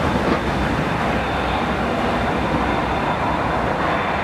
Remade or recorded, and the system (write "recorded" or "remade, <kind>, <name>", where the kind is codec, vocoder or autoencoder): recorded